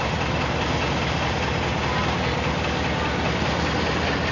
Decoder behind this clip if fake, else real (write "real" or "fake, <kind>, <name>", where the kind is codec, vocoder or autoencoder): real